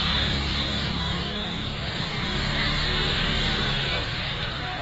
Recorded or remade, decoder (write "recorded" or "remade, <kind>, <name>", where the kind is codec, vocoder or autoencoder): remade, codec, DAC